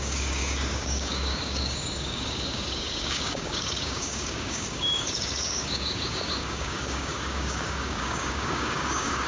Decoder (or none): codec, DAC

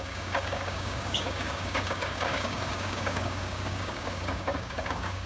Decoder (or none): codec, DAC